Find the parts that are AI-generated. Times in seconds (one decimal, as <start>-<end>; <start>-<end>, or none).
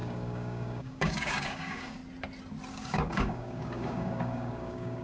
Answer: 0.0-2.0; 2.7-5.0